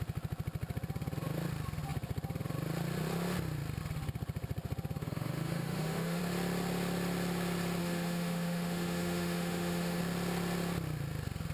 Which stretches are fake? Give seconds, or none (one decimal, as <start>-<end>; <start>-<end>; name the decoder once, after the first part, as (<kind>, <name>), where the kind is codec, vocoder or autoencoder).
5.0-6.2 (autoencoder, DAC-VAE); 7.8-10.0

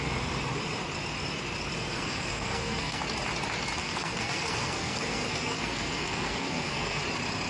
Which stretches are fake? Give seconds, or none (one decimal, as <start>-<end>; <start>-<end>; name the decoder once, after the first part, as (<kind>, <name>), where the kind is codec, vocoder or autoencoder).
1.9-3.0 (codec, SNAC); 3.8-7.0

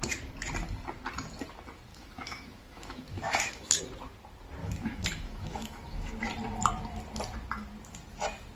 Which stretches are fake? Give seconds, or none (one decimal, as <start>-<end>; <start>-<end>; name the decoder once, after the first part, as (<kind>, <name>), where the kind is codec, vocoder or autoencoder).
1.9-3.8 (autoencoder, DAC-VAE); 4.6-6.1

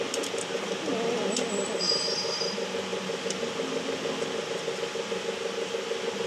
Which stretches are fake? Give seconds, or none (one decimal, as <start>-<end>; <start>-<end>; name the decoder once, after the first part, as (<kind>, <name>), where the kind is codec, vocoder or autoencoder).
none

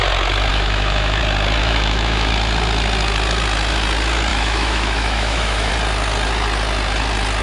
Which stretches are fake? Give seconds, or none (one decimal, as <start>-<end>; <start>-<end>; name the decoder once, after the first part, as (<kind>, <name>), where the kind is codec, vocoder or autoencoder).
0.5-1.2 (autoencoder, DAC-VAE); 1.6-2.3; 4.3-5.7

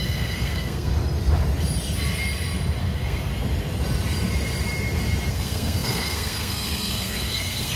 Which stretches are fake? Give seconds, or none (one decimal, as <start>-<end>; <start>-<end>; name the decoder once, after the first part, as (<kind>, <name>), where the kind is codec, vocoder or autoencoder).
0.0-0.9 (codec, SNAC); 2.8-3.3; 5.3-7.8